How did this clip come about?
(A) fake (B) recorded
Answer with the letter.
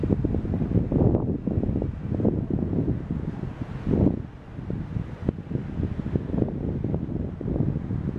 B